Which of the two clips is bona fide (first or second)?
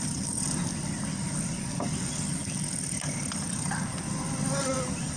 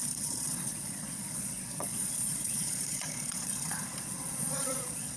first